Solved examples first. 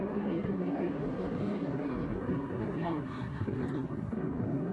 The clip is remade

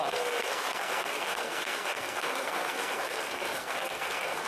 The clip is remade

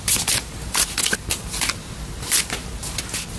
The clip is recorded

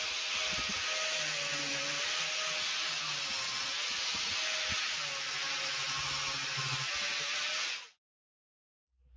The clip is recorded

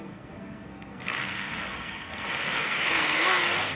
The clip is remade